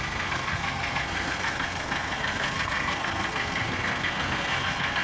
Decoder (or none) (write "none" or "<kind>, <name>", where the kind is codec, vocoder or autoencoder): codec, SNAC